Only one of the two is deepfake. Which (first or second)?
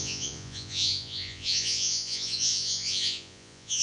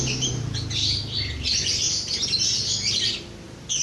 first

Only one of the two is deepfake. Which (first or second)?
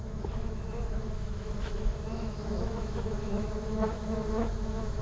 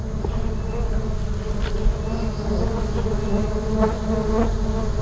first